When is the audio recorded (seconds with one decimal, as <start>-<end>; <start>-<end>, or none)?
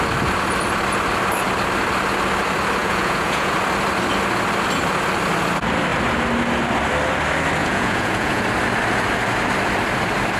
0.0-2.8; 3.5-7.6; 8.4-10.4